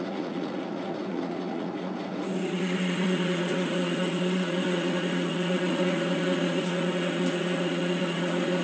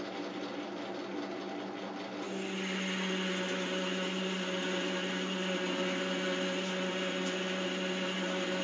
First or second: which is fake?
first